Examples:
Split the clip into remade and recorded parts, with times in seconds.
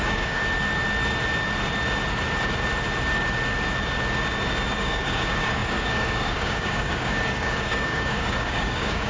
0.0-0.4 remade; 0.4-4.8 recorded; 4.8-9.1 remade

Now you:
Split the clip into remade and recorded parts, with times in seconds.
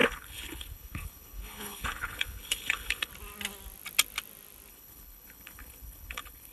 0.0-3.1 remade; 3.1-4.7 recorded; 4.7-6.5 remade